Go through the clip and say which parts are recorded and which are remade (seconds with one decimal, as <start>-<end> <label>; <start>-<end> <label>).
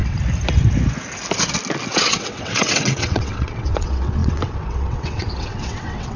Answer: 0.0-1.9 recorded; 1.9-6.2 remade